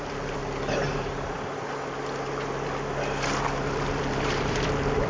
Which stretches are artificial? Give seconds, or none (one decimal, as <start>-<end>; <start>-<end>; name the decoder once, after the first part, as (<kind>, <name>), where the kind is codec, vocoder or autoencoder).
0.0-0.4 (vocoder, BigVGAN v2); 3.4-5.1

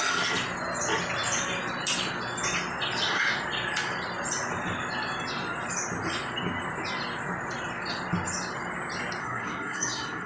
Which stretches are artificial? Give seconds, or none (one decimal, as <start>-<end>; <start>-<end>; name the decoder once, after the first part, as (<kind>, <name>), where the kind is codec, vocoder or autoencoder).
9.2-10.3 (codec, SNAC)

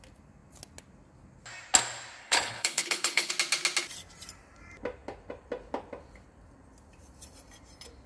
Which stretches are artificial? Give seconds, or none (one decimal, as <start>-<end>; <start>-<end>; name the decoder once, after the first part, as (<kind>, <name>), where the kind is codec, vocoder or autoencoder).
2.2-3.3 (codec, HILCodec)